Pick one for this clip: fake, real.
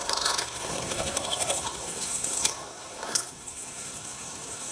fake